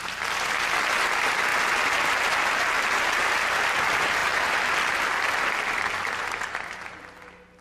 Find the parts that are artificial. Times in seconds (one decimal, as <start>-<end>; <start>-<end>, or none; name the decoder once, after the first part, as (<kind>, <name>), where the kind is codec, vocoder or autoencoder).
none